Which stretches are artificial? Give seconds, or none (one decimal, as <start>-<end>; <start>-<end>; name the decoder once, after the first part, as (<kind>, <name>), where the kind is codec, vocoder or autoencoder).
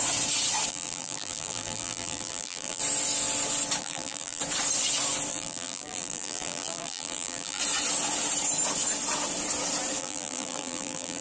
0.7-2.8 (vocoder, BigVGAN v2); 3.8-4.4; 5.3-7.6; 10.0-11.2